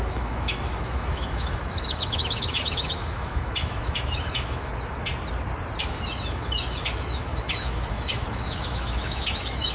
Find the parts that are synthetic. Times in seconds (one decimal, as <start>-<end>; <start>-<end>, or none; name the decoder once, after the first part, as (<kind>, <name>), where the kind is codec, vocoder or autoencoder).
0.0-4.7 (autoencoder, DAC-VAE); 5.8-9.7